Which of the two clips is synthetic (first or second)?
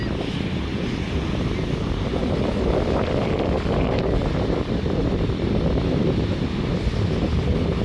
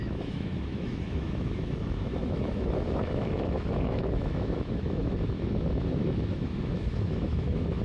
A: second